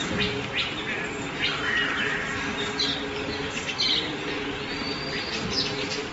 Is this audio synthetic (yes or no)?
no